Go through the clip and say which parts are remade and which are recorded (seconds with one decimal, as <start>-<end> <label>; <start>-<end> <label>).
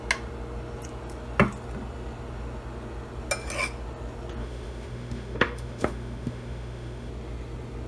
0.0-4.4 recorded; 4.4-7.1 remade; 7.1-7.9 recorded